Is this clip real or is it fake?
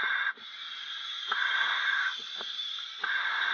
fake